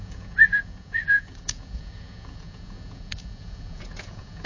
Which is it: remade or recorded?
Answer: remade